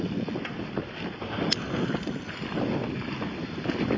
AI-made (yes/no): no